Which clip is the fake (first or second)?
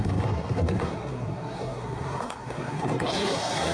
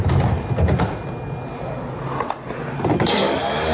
first